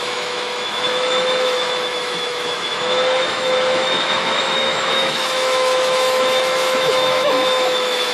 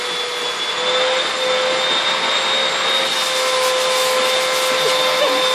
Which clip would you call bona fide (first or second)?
second